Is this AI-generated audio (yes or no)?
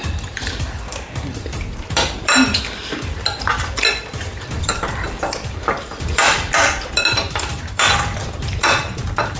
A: yes